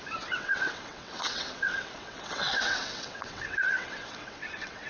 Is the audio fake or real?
fake